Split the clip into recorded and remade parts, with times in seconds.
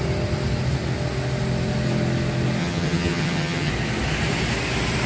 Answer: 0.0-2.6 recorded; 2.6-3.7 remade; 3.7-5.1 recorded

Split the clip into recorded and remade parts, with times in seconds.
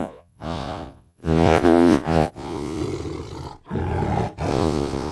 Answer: 0.0-2.8 remade; 2.8-4.5 recorded; 4.5-5.1 remade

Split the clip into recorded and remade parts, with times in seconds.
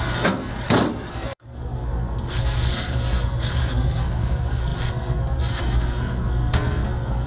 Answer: 0.0-0.5 remade; 0.5-1.1 recorded; 1.1-7.3 remade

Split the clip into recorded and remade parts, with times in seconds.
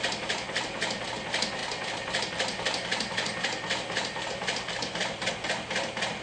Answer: 0.0-1.6 recorded; 1.6-5.3 remade; 5.3-6.2 recorded